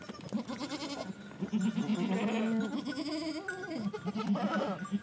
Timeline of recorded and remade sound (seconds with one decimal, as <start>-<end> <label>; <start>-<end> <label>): 0.0-5.0 recorded